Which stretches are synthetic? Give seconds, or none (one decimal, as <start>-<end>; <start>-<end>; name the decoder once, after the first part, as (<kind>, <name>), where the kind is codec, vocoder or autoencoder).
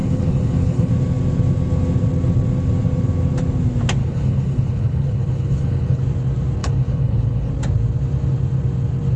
0.0-0.9 (codec, HILCodec); 4.0-6.0; 6.6-7.5